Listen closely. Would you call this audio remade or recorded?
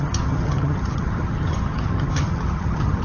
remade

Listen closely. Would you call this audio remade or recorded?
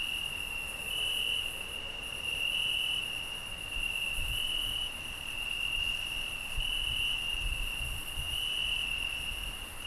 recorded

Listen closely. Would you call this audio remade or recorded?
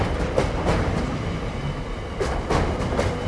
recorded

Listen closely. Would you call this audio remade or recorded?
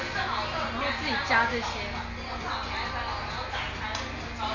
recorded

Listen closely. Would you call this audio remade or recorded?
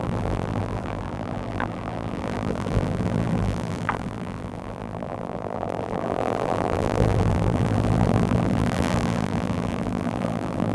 remade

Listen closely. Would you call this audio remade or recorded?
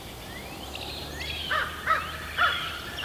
recorded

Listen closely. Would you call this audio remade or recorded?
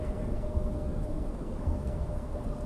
remade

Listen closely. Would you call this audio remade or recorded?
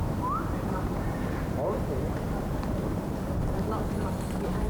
remade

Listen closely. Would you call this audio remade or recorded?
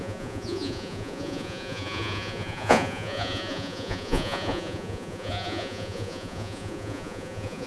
remade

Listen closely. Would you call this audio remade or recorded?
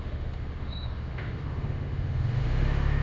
remade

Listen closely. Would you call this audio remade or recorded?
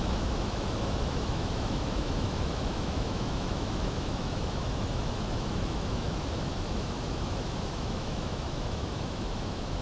remade